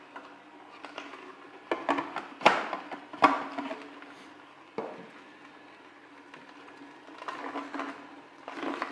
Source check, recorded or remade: recorded